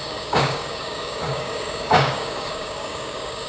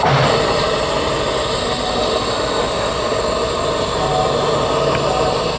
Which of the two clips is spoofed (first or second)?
first